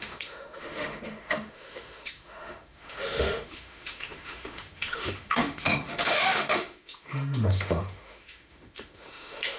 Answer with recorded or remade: remade